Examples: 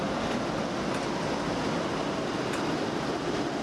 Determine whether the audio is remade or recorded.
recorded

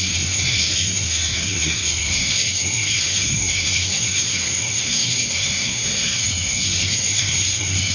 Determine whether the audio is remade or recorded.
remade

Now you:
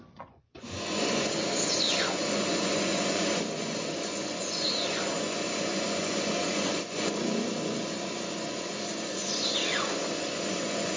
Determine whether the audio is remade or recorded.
remade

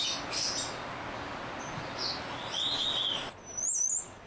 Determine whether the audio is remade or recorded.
recorded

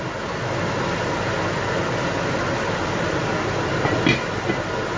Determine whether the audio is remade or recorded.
recorded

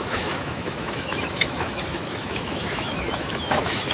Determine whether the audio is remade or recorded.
remade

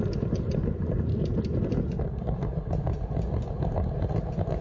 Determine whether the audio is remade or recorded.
recorded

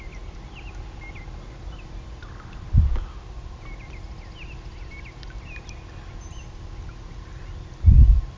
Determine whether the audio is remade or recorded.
recorded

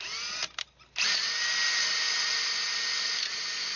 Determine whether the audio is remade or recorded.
recorded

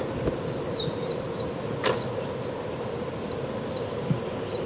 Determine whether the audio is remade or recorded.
recorded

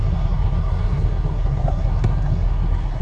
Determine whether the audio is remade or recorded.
remade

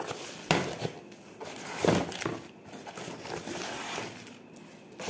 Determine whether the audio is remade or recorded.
recorded